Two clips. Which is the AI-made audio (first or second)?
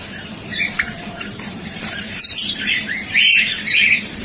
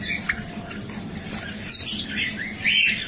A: first